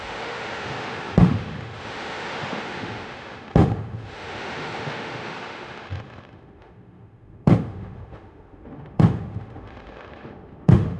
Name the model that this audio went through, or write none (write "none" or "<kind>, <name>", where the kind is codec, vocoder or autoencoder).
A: autoencoder, DAC-VAE